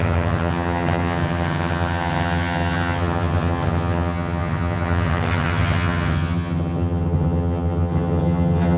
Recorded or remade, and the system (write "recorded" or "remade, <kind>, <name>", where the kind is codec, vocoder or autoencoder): remade, vocoder, HiFi-GAN